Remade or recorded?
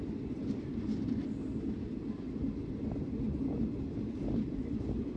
recorded